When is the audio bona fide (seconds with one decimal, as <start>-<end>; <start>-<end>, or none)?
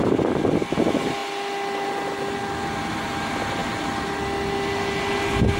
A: 0.0-5.6